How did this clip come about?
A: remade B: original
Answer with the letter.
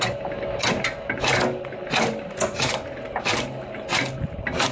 B